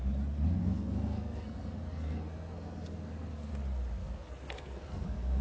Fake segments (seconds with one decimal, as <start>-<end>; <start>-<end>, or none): 0.6-3.5; 4.0-5.4